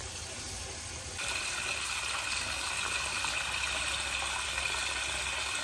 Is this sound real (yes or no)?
yes